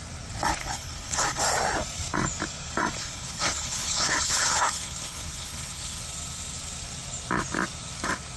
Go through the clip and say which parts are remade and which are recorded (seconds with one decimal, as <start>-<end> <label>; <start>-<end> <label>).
0.0-0.6 recorded; 0.6-1.4 remade; 1.4-3.0 recorded; 3.0-6.0 remade; 6.0-8.4 recorded